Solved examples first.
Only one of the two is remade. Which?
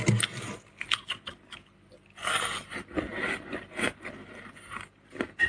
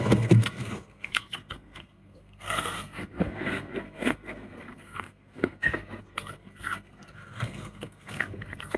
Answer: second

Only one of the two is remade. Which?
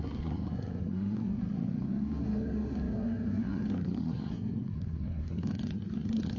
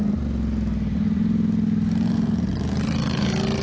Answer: first